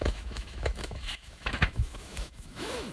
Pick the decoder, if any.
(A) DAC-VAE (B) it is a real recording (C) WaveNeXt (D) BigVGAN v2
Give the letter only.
A